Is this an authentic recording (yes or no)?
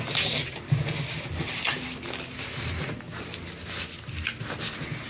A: yes